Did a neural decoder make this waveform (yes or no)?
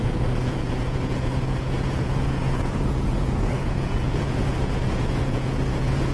yes